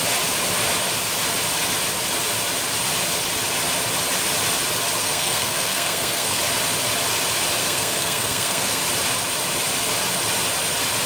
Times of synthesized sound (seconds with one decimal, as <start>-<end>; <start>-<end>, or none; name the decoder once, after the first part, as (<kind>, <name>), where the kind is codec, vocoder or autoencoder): 5.0-6.4 (codec, SNAC); 7.6-8.8